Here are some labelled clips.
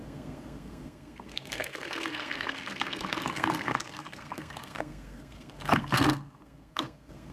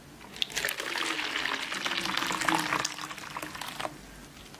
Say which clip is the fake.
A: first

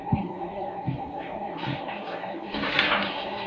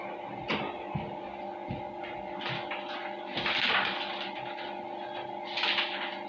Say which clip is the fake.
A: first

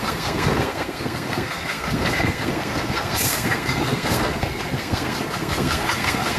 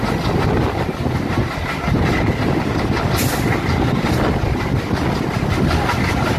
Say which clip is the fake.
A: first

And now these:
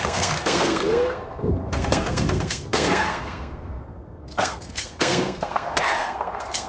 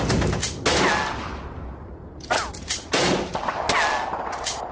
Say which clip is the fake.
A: first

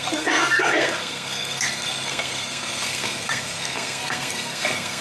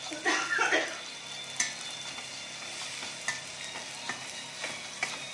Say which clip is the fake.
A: first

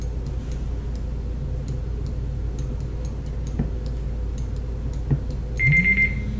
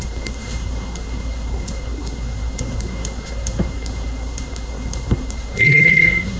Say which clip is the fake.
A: second